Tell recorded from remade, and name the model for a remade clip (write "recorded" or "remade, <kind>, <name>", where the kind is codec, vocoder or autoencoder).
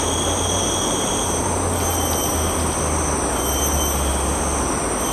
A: recorded